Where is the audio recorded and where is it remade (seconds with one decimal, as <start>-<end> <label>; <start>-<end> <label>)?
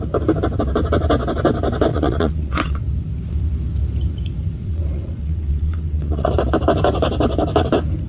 0.0-1.9 recorded; 1.9-2.8 remade; 2.8-4.6 recorded; 4.6-6.3 remade; 6.3-8.1 recorded